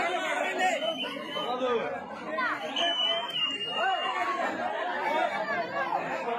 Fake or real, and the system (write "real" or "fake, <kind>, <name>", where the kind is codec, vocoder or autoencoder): real